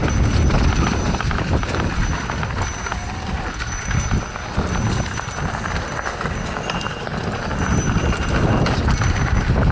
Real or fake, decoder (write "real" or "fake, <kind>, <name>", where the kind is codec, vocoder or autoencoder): real